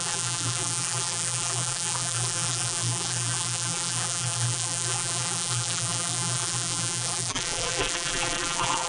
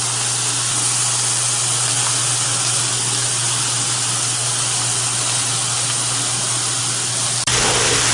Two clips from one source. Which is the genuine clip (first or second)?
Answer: second